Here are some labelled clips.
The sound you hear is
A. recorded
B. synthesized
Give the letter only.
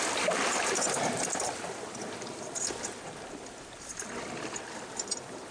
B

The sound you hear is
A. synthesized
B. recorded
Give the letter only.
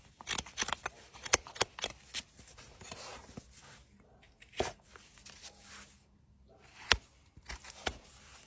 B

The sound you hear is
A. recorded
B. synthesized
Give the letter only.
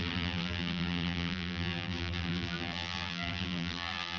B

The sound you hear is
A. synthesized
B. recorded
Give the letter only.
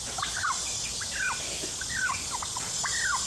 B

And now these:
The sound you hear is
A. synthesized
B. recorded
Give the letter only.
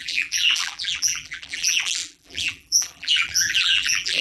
A